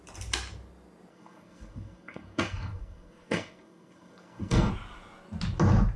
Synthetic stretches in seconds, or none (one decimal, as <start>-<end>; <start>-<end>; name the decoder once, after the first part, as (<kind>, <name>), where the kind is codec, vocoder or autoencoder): 1.1-4.7 (codec, SNAC)